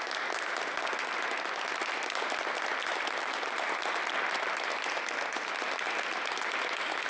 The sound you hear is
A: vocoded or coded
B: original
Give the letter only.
B